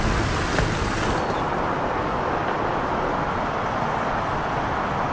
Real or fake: real